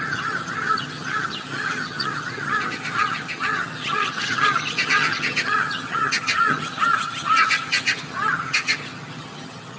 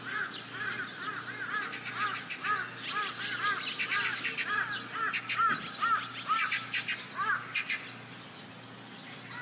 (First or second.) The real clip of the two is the second